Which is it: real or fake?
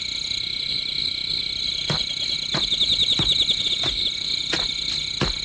real